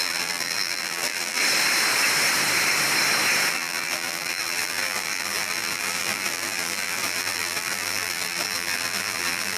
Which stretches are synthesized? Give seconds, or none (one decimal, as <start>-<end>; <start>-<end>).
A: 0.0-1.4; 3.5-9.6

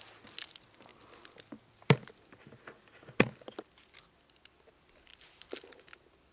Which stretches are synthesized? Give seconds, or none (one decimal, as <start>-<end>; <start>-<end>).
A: none

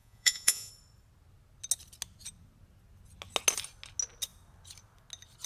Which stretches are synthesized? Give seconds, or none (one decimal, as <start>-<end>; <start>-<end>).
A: 0.0-0.7

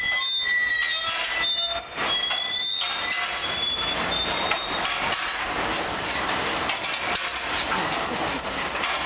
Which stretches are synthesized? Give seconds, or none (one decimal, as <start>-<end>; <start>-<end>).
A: none

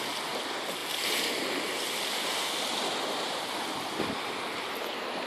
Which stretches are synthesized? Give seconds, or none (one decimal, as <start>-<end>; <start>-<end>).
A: none

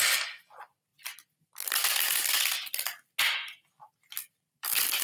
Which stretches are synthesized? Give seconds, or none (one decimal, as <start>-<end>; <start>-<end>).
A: 0.0-0.9; 3.9-5.0

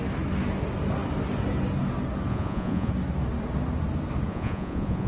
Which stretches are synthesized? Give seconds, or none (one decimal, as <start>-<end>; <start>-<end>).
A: 2.3-2.9; 4.3-5.1